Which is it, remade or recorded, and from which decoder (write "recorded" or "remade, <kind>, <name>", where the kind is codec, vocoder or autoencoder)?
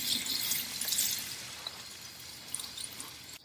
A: recorded